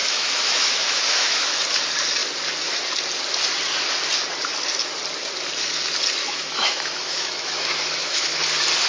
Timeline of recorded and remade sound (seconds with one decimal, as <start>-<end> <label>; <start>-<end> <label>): 0.0-1.6 remade; 1.6-6.2 recorded; 6.2-8.4 remade; 8.4-8.9 recorded